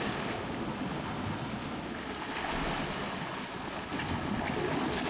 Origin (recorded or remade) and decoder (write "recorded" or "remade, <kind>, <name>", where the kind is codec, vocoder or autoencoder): recorded